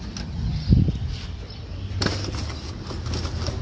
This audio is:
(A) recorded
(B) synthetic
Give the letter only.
A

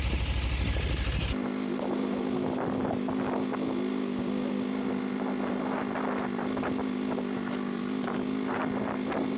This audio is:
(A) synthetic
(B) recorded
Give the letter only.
B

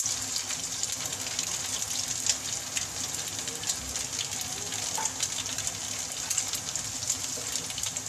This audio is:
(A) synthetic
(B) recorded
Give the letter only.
B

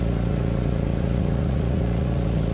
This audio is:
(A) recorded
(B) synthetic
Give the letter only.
B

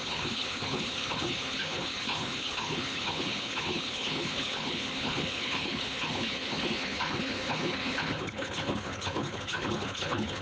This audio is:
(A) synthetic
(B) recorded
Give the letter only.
A